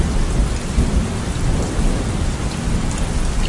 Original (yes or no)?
yes